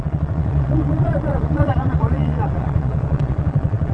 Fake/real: fake